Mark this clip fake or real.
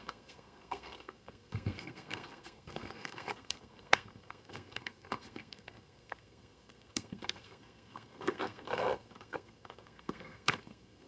fake